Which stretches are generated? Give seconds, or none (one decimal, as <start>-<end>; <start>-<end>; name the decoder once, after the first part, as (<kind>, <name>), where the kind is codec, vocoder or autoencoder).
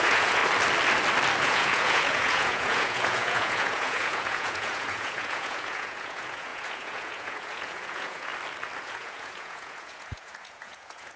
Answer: 0.0-0.4 (vocoder, Vocos); 1.4-8.3; 8.8-11.2